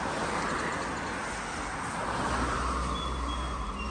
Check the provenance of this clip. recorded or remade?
recorded